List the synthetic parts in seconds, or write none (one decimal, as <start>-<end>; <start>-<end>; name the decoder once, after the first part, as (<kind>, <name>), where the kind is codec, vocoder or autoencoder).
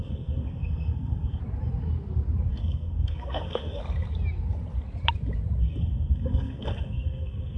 0.0-1.4 (codec, SNAC); 2.5-3.8; 5.6-7.6